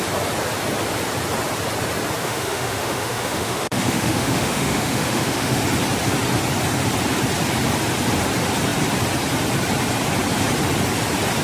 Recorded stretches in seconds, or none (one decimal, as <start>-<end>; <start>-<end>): 0.0-2.2; 5.6-11.4